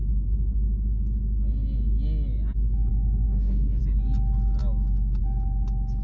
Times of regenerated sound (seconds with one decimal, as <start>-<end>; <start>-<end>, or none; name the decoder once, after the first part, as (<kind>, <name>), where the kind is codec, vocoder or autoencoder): 2.9-3.8 (autoencoder, DAC-VAE)